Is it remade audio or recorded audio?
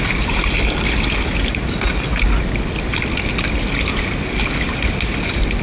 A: recorded